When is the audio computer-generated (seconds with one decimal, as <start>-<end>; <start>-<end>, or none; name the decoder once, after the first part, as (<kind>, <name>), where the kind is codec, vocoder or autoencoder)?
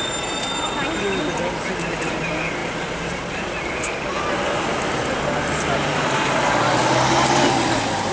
none